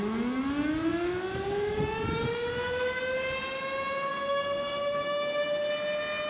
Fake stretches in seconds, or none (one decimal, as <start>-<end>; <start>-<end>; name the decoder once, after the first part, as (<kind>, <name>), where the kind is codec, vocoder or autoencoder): 0.9-3.0 (codec, DAC); 4.1-5.7